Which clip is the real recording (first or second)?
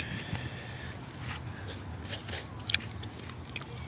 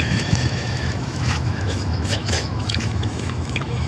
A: first